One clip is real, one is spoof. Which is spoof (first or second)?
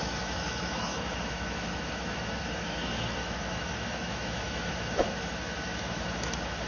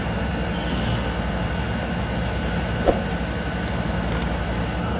first